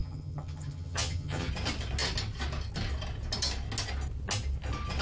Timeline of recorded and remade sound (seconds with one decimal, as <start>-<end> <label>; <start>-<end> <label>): 0.0-1.5 remade; 1.5-5.0 recorded